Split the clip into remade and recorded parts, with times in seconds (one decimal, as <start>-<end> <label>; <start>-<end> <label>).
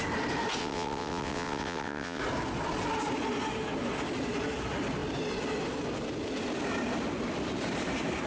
0.0-0.6 recorded; 0.6-2.2 remade; 2.2-8.3 recorded